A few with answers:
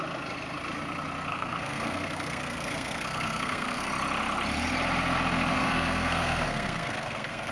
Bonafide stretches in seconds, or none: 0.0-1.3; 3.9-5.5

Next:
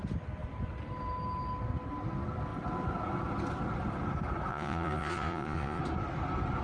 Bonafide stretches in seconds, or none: 0.0-4.5; 5.8-6.6

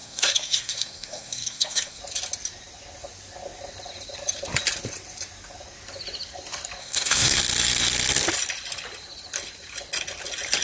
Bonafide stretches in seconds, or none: 2.0-6.8; 7.4-10.6

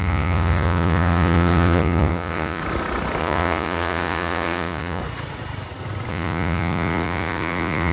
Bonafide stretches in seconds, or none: 2.6-3.2; 5.0-6.1

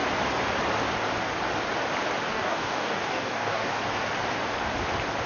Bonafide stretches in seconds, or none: 0.0-2.3; 3.8-5.3

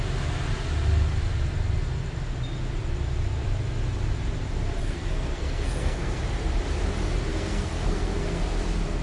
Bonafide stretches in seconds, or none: 0.0-4.8; 6.2-7.3; 8.4-9.0

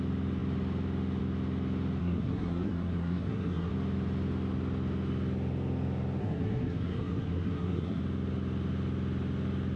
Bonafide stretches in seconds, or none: 0.0-2.0; 3.7-6.2; 8.0-9.8